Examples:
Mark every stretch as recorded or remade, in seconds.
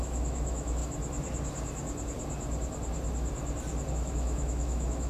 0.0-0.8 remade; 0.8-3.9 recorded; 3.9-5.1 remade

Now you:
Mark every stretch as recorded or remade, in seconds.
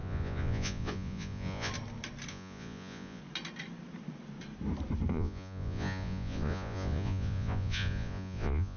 0.0-1.7 remade; 1.7-2.3 recorded; 2.3-3.2 remade; 3.2-5.1 recorded; 5.1-8.8 remade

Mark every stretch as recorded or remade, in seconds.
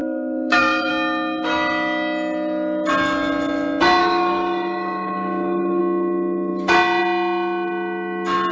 0.0-0.9 remade; 0.9-4.0 recorded; 4.0-5.8 remade; 5.8-8.5 recorded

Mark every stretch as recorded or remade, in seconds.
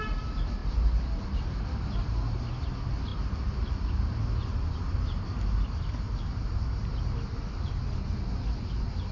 0.0-9.1 recorded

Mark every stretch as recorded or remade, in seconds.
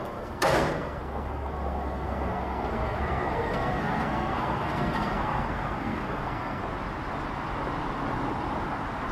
0.0-6.6 remade; 6.6-9.1 recorded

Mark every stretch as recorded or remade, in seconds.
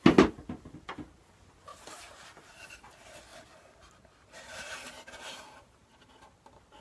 0.0-1.7 recorded; 1.7-2.5 remade; 2.5-3.3 recorded; 3.3-6.1 remade; 6.1-6.8 recorded